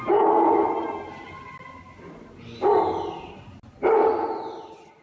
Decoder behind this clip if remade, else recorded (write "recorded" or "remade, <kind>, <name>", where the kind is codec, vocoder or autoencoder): recorded